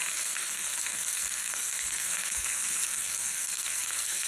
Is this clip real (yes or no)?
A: no